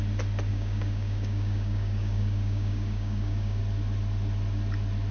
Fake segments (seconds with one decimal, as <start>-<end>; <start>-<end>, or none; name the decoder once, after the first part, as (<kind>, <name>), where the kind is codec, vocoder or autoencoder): 0.5-3.6 (codec, DAC)